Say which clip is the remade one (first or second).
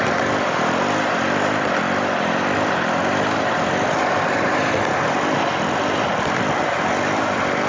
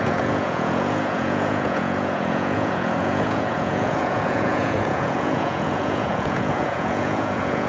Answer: second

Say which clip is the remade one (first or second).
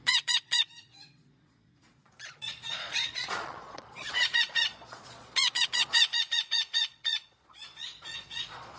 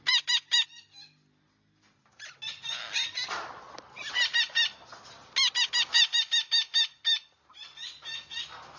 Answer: first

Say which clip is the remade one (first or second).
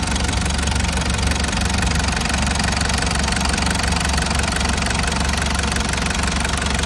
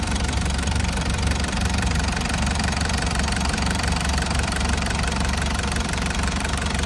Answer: second